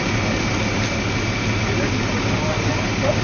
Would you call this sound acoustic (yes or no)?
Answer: yes